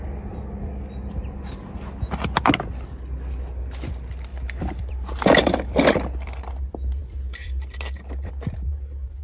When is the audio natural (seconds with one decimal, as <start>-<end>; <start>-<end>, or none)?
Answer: 0.0-4.3; 6.6-7.0; 8.3-9.2